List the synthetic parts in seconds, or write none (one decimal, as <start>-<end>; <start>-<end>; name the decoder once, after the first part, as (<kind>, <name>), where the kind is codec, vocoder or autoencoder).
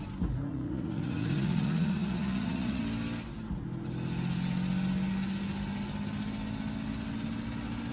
0.5-2.8 (vocoder, Vocos)